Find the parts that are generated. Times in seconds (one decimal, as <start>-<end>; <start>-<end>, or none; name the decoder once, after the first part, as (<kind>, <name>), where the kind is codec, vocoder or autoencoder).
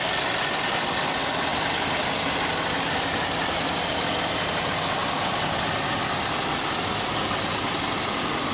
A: none